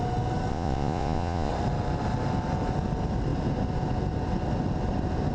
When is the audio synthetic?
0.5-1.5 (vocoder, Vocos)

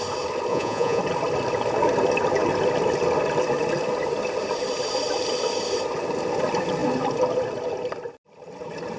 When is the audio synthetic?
0.5-1.0 (vocoder, Vocos)

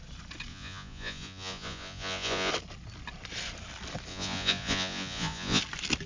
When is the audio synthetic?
0.5-2.5 (vocoder, Vocos); 4.1-5.6

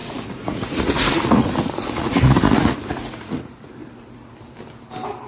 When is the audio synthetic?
0.0-3.8 (vocoder, Vocos)

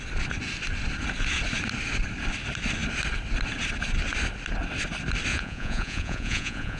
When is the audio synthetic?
5.3-6.8 (vocoder, Vocos)

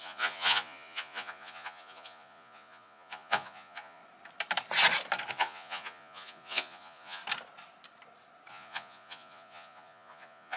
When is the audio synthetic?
0.0-4.0 (vocoder, Vocos); 5.3-7.2; 8.5-10.6

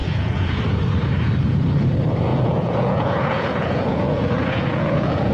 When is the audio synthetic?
0.0-0.6 (vocoder, Vocos); 2.3-5.3

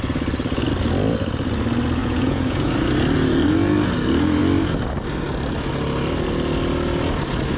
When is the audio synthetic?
2.0-2.7 (vocoder, Vocos)